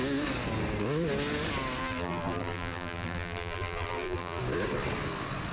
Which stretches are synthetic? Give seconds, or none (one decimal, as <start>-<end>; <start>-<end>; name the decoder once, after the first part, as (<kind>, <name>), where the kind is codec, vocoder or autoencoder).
1.8-4.4 (vocoder, BigVGAN v2)